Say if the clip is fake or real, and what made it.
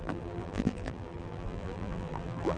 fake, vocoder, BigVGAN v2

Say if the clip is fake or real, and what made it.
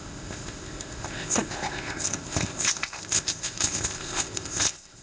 fake, codec, ZipCodec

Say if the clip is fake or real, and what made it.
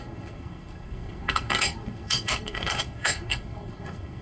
fake, codec, SNAC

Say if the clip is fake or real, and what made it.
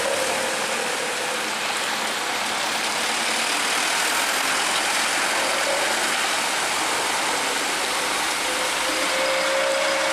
real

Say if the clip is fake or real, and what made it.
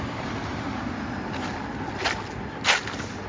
real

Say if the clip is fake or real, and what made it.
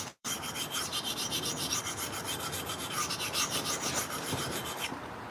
fake, vocoder, BigVGAN v2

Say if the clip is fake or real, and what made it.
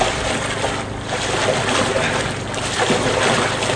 real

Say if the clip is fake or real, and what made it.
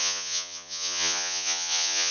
fake, vocoder, Vocos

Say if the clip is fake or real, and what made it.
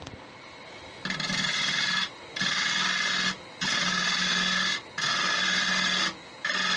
real